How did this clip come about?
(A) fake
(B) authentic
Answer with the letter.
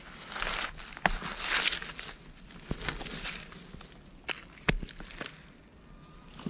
B